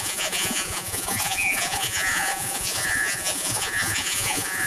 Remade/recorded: remade